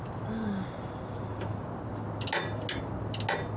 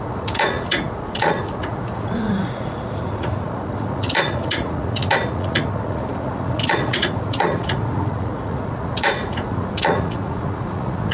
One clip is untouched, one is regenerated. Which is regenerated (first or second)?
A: second